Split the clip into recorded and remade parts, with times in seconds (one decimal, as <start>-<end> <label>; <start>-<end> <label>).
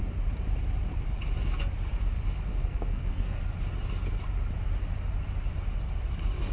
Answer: 0.0-2.5 recorded; 2.5-3.4 remade; 3.4-6.5 recorded